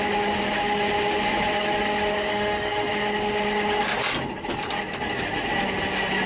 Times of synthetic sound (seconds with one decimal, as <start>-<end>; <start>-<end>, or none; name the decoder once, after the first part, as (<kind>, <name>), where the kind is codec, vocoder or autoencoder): 2.3-2.9 (autoencoder, DAC-VAE)